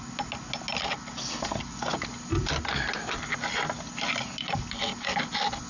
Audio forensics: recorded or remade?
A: recorded